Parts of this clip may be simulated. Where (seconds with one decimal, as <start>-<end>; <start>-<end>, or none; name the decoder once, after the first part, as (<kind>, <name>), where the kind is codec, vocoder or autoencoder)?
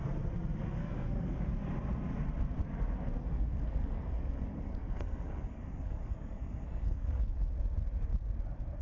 0.8-1.5 (codec, SNAC); 3.2-7.3